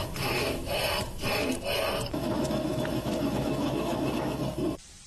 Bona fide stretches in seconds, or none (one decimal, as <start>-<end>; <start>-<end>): 0.6-2.1; 4.4-5.1